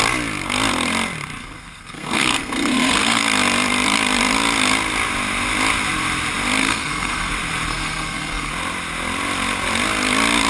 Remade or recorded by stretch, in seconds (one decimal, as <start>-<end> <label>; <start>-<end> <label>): 0.0-1.4 recorded; 1.4-3.2 remade; 3.2-6.6 recorded; 6.6-7.3 remade; 7.3-7.7 recorded; 7.7-8.5 remade; 8.5-10.5 recorded

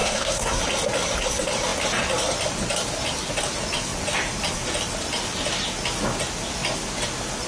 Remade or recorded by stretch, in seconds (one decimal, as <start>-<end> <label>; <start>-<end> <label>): 0.0-0.6 remade; 0.6-7.5 recorded